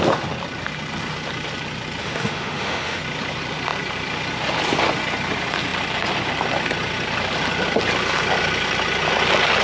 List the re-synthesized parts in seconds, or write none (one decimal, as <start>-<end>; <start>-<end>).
2.0-3.0